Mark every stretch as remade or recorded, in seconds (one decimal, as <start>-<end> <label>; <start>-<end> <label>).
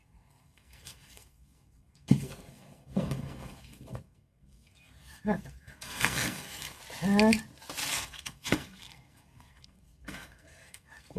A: 0.0-6.8 remade; 6.8-7.9 recorded; 7.9-11.2 remade